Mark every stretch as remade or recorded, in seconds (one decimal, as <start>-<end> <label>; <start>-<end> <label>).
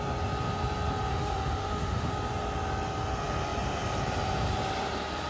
0.0-1.1 recorded; 1.1-2.1 remade; 2.1-5.3 recorded